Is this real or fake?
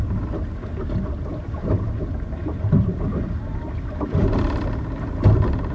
real